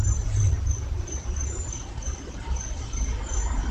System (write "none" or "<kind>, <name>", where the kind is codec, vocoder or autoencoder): vocoder, BigVGAN v2